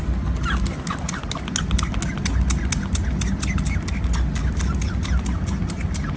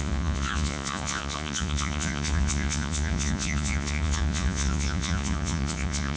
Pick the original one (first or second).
first